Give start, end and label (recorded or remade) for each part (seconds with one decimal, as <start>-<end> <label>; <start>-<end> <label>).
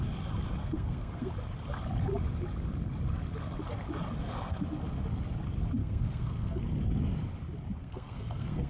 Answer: 0.0-0.6 recorded; 0.6-1.3 remade; 1.3-5.8 recorded; 5.8-6.6 remade; 6.6-7.8 recorded; 7.8-8.7 remade